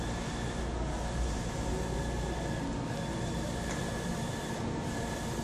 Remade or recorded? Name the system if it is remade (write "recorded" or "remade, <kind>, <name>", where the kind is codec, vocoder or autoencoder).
recorded